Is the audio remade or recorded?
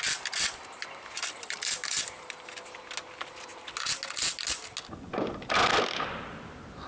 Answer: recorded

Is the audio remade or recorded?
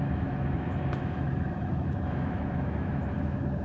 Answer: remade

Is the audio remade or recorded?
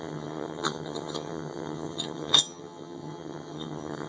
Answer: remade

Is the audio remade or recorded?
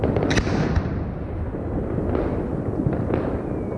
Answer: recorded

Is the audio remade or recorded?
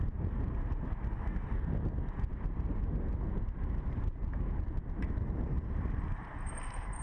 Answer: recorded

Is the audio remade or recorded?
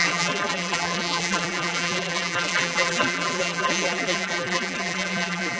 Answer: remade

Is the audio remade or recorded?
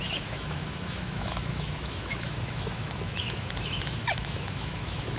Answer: remade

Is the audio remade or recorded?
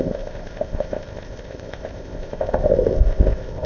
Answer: remade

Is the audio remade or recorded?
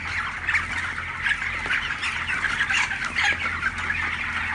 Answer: recorded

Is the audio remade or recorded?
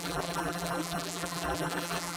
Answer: remade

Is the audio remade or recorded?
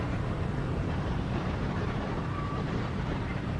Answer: remade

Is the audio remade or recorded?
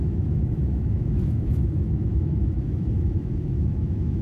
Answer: remade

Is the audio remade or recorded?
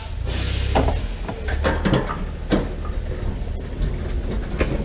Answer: recorded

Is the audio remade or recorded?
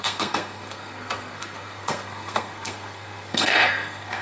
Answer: remade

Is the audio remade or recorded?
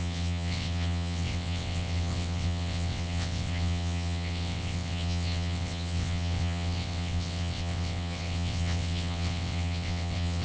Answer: remade